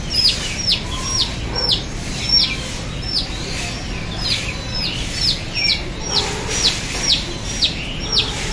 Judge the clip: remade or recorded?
recorded